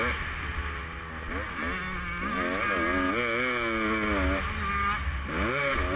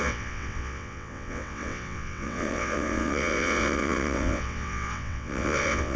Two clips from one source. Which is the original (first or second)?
first